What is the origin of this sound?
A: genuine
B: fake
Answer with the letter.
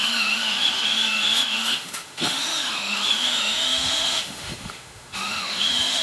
B